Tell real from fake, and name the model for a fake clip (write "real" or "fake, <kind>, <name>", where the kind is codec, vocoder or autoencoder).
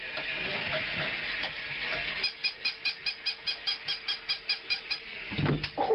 real